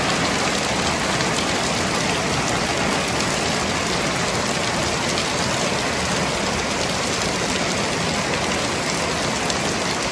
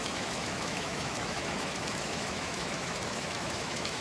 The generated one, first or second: second